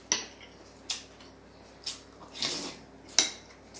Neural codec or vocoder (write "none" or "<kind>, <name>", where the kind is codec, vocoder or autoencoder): none